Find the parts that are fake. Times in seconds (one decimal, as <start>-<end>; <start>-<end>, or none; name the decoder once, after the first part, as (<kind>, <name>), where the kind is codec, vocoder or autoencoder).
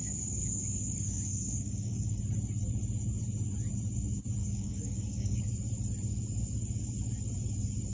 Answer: 0.0-2.2 (codec, DAC); 4.4-5.4